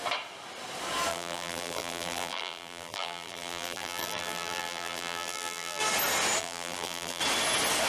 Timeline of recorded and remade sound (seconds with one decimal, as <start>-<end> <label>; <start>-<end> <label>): 0.0-1.1 recorded; 1.1-5.8 remade; 5.8-6.4 recorded; 6.4-7.2 remade; 7.2-7.9 recorded